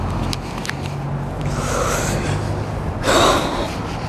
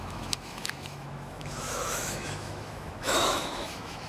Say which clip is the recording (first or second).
first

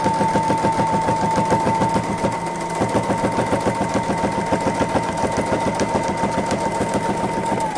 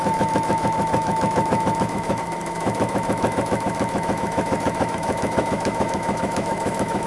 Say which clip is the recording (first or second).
first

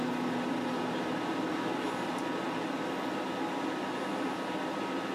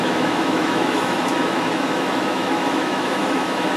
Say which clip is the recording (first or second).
first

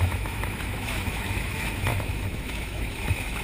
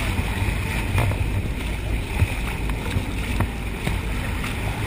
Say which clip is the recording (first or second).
second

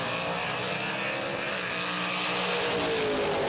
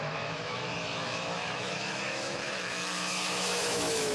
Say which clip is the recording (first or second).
first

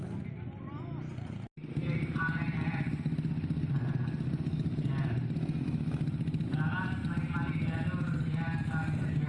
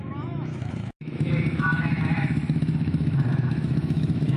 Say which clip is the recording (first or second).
first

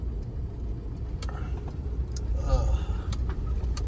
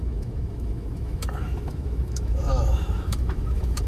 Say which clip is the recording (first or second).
first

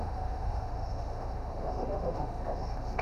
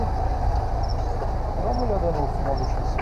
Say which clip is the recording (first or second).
second